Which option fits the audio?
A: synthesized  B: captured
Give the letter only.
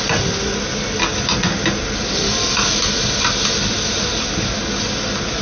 B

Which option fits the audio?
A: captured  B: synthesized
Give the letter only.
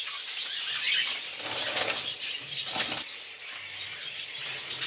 A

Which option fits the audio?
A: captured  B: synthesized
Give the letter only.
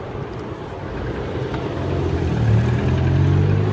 A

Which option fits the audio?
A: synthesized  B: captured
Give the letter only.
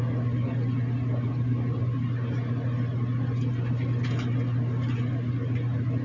B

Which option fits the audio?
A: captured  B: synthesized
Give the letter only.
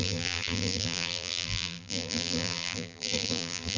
B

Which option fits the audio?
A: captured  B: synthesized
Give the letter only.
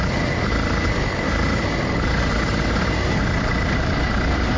A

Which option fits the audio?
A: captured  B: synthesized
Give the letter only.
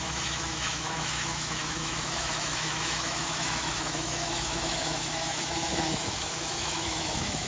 B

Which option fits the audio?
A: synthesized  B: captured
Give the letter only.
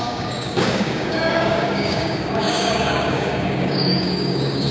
A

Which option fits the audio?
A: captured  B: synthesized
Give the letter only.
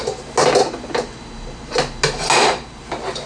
A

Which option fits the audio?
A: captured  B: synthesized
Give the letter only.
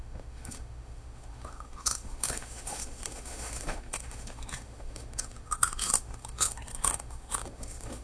B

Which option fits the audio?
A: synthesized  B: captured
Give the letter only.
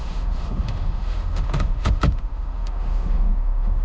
A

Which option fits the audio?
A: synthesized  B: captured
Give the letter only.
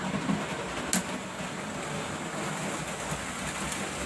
B